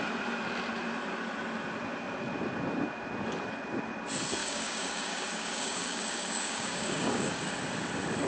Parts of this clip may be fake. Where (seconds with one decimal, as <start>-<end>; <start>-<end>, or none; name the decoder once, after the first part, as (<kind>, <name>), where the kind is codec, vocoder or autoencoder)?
4.4-7.4 (codec, DAC)